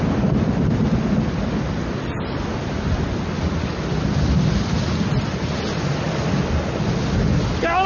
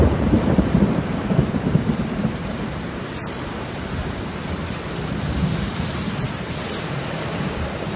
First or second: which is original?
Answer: first